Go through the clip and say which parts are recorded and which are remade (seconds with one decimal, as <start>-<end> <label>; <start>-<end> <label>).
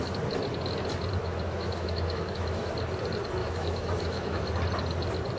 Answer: 0.0-1.2 recorded; 1.2-2.7 remade; 2.7-3.4 recorded; 3.4-4.5 remade; 4.5-5.4 recorded